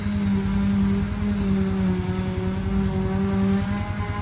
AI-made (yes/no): no